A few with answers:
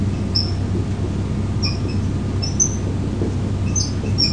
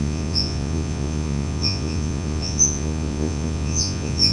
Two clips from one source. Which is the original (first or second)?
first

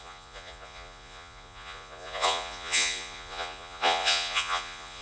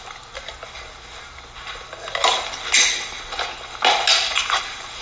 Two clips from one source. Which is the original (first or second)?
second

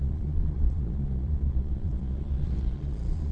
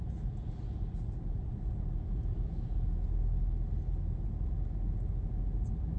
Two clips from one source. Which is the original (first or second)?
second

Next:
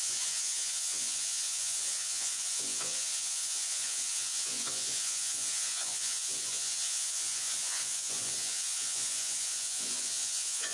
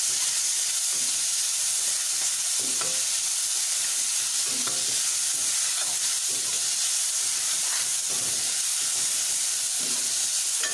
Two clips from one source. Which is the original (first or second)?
second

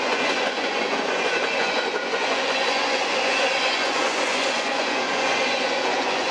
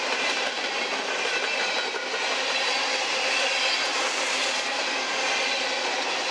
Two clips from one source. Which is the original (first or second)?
second